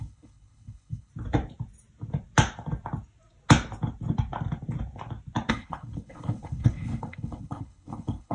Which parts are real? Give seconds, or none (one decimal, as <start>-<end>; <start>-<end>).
1.1-5.5